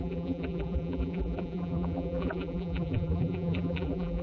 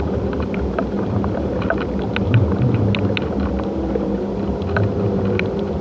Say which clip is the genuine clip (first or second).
second